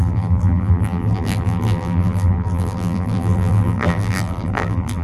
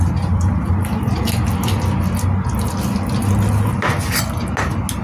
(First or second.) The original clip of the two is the second